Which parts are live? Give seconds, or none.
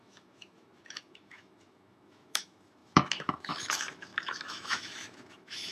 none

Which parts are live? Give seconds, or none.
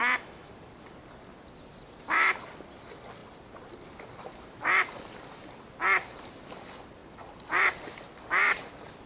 0.5-9.1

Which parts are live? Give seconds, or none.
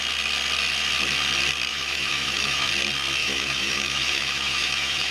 0.0-1.7; 2.7-3.2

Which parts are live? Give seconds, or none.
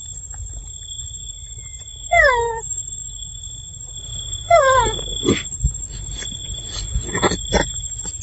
0.0-1.9; 3.4-8.2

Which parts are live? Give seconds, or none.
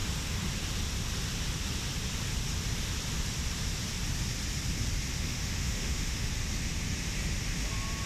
0.0-5.1; 6.3-8.1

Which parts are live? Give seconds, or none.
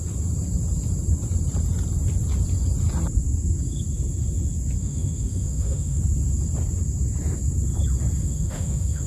0.0-4.8; 6.0-8.2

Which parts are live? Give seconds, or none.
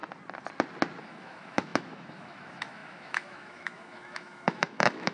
0.0-1.0